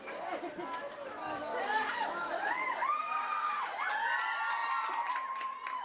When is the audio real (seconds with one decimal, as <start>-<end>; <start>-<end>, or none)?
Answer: 0.0-1.5; 3.9-5.8

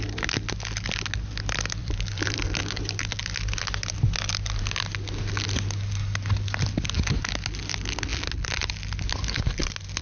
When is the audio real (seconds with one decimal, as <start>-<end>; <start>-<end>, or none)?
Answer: 0.0-1.8; 2.6-10.0